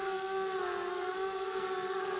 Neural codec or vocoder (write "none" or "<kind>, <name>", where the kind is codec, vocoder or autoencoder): codec, SNAC